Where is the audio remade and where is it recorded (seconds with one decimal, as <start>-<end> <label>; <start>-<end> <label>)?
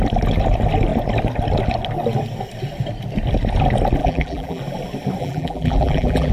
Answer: 0.0-4.0 recorded; 4.0-4.6 remade; 4.6-5.2 recorded; 5.2-6.3 remade